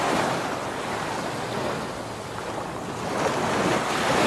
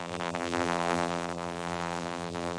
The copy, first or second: second